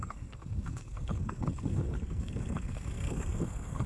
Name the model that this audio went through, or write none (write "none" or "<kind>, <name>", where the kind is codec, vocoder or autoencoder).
codec, SNAC